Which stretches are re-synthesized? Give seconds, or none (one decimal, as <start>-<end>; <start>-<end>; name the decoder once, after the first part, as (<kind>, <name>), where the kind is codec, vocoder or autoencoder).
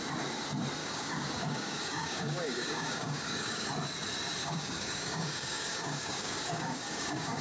0.8-3.7 (codec, DAC); 4.4-7.4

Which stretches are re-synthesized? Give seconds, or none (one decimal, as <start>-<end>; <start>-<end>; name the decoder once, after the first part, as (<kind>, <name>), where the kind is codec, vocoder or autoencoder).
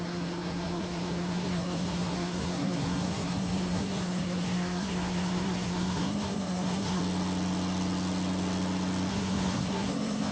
0.0-7.0 (codec, SNAC); 9.1-10.3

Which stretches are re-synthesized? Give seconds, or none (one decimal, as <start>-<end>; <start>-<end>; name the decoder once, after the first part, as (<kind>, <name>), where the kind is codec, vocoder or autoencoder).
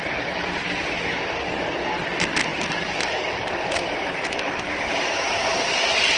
2.5-5.6 (vocoder, BigVGAN v2)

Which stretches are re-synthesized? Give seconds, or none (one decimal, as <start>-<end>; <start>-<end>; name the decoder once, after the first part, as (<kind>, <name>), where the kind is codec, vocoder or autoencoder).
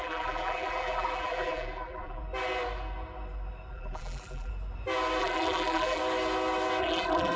0.0-2.2 (vocoder, BigVGAN v2); 3.7-4.5; 5.2-6.0; 6.8-7.4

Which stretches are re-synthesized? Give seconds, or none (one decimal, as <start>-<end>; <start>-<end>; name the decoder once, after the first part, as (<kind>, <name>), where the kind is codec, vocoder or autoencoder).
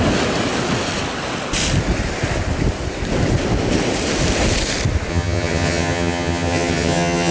5.1-7.3 (vocoder, HiFi-GAN)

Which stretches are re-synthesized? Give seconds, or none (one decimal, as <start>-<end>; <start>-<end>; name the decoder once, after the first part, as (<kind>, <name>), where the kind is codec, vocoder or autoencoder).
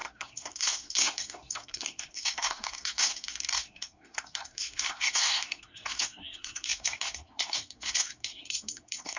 0.0-9.2 (codec, SNAC)